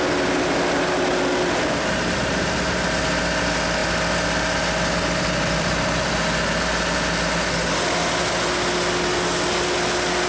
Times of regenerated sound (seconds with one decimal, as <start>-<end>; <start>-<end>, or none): none